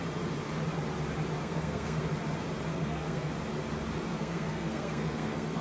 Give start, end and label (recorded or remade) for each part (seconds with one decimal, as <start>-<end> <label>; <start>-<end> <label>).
0.0-1.4 recorded; 1.4-2.0 remade; 2.0-2.7 recorded; 2.7-3.3 remade; 3.3-4.1 recorded; 4.1-5.6 remade